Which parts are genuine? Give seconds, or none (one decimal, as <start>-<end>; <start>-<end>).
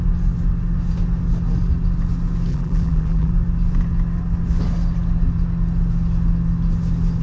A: 0.0-2.5; 3.3-7.2